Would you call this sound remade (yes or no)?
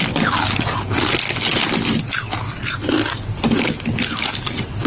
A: no